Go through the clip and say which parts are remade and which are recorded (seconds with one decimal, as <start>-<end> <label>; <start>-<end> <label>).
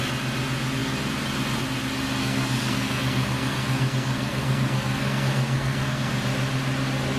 0.0-2.2 recorded; 2.2-6.1 remade; 6.1-7.2 recorded